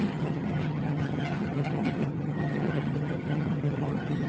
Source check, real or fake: fake